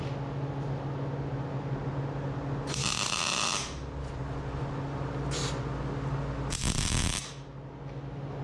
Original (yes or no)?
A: yes